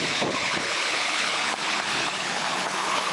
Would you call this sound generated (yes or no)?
yes